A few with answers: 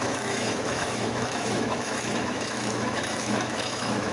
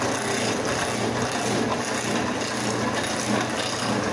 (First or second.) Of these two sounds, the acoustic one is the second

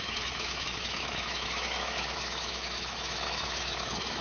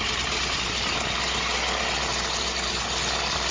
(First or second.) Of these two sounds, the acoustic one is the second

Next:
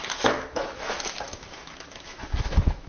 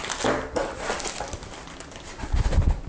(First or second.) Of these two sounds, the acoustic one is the second